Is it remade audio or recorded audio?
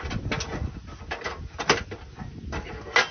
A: recorded